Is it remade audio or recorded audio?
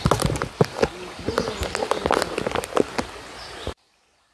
recorded